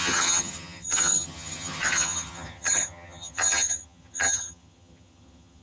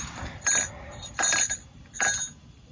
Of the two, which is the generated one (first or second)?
first